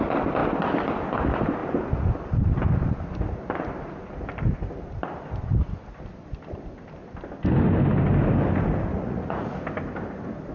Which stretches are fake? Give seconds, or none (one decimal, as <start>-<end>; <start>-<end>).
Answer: 8.9-9.6